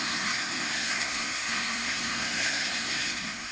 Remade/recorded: remade